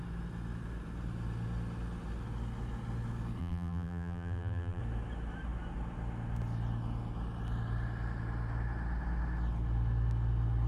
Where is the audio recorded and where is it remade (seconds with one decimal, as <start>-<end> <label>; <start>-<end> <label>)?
0.0-3.4 recorded; 3.4-4.8 remade; 4.8-10.7 recorded